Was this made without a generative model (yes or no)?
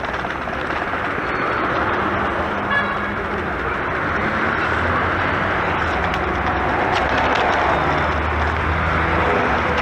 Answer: yes